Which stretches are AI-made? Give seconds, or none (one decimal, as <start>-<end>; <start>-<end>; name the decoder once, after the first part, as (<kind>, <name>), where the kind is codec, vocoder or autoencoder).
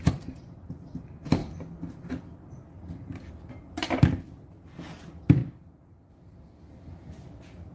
none